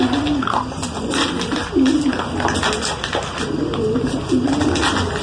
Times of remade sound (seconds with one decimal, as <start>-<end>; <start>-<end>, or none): none

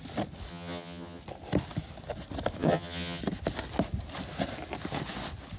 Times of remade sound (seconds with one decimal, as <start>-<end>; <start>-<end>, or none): 0.5-1.2; 2.6-3.2

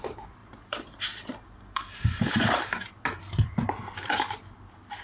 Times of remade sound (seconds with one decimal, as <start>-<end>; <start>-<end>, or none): 0.4-2.3

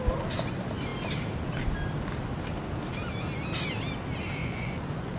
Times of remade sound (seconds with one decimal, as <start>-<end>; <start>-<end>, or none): 4.4-5.2

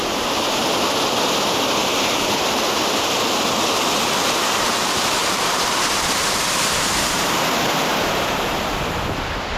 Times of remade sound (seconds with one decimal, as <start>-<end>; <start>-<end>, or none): 1.8-2.6; 5.2-9.0

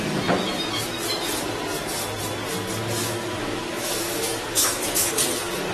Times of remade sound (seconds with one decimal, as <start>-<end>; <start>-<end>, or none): 3.0-5.1